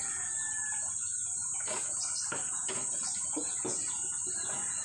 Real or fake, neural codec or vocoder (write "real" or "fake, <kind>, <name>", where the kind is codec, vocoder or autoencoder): real